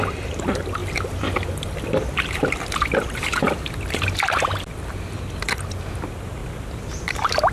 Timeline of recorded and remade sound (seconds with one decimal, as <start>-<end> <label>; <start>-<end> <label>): 0.0-7.5 recorded